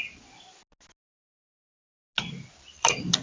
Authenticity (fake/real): real